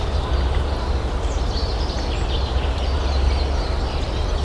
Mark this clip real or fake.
real